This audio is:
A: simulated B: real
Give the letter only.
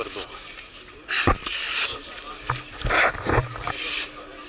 B